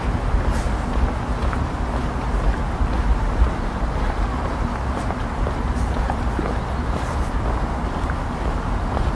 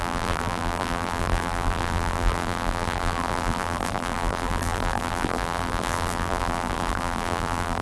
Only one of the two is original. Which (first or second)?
first